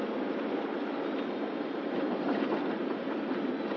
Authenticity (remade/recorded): recorded